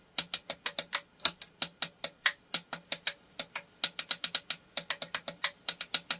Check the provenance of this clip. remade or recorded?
recorded